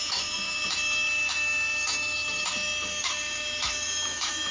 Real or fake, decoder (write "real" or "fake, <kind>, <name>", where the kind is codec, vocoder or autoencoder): fake, autoencoder, DAC-VAE